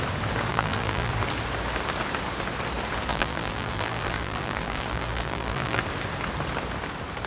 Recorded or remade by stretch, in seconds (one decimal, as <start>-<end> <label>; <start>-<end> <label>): 0.0-0.5 recorded; 0.5-1.1 remade; 1.1-3.1 recorded; 3.1-5.8 remade; 5.8-7.3 recorded